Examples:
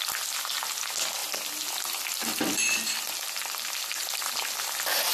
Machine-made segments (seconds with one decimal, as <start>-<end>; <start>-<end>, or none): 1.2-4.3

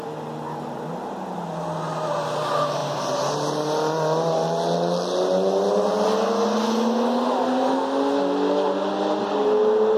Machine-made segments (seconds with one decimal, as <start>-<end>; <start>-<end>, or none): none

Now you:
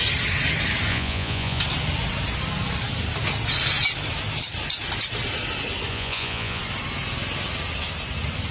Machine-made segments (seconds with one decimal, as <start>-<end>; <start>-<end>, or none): 0.9-1.6; 5.9-6.6

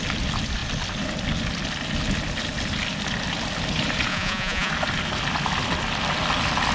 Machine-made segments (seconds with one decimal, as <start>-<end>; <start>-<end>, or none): 4.1-4.7

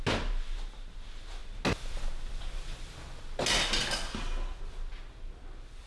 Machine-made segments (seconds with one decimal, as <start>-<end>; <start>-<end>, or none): none